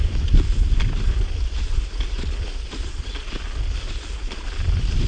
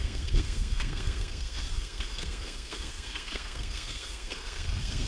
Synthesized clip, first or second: second